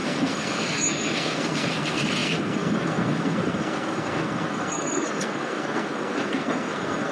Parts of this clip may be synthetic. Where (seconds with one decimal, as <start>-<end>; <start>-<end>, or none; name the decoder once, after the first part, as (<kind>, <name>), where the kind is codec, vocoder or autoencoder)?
0.0-7.1 (codec, SNAC)